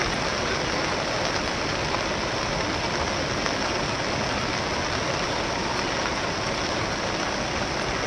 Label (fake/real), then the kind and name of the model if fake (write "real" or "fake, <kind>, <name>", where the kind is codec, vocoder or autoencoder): real